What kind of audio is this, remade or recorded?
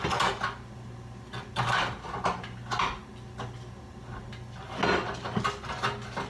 recorded